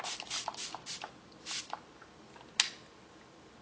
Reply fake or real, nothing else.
real